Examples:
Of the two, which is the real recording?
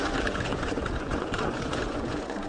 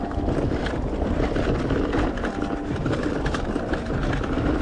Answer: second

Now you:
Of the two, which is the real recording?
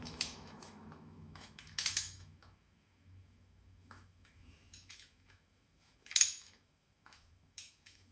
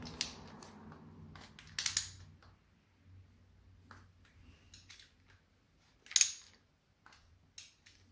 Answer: second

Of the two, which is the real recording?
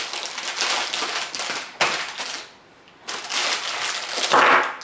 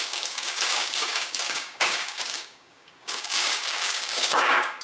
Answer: first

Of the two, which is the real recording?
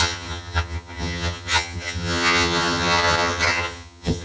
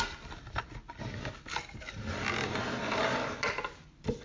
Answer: second